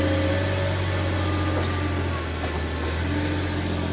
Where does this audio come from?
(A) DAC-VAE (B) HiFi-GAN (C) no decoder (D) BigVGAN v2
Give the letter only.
C